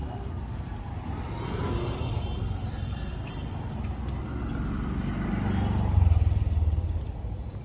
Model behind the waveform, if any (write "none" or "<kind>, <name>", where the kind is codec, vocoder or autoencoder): none